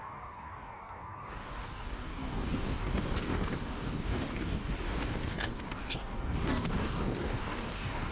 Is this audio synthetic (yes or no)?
yes